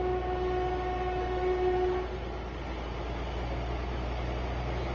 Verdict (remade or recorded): recorded